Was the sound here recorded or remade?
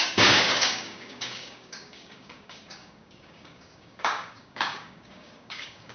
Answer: remade